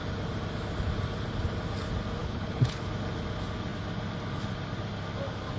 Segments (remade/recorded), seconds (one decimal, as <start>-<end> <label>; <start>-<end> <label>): 0.0-2.2 recorded; 2.2-2.8 remade; 2.8-5.6 recorded